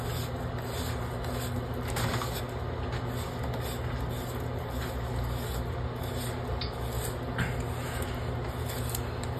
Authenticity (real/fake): real